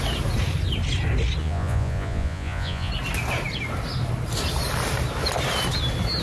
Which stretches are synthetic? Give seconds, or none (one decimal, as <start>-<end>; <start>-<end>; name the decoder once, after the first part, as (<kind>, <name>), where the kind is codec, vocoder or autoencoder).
1.4-2.9 (vocoder, Vocos)